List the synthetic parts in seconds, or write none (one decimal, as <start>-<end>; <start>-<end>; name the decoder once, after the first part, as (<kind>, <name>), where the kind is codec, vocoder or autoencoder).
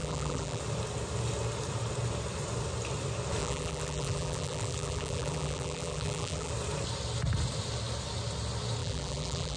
0.0-0.6 (vocoder, BigVGAN v2); 3.4-6.5; 8.8-9.6